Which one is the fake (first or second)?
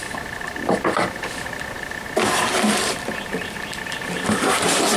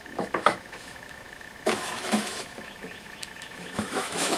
second